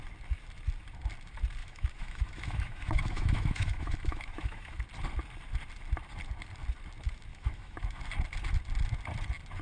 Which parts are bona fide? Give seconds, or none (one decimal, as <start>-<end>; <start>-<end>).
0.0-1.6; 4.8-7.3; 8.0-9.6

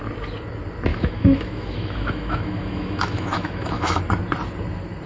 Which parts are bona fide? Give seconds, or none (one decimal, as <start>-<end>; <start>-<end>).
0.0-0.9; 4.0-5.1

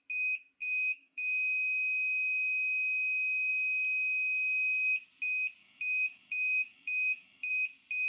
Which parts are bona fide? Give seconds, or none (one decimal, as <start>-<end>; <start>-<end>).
0.0-0.6; 3.5-5.6; 7.5-8.1

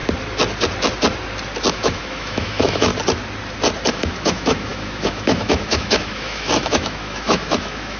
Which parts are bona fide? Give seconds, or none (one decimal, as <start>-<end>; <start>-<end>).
0.0-1.7; 2.9-3.9

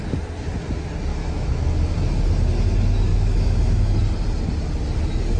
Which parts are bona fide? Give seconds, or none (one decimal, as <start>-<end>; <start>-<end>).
0.0-1.1; 1.9-3.1; 4.0-5.4

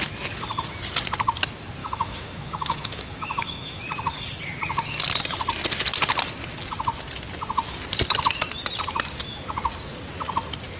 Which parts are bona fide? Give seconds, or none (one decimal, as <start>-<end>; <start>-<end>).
0.0-1.8; 3.8-10.8

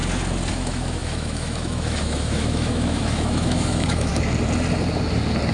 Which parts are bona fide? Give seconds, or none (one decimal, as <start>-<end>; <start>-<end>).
0.0-0.5; 4.1-5.5

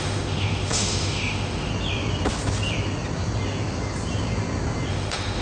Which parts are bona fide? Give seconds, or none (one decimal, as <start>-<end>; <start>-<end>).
1.7-4.9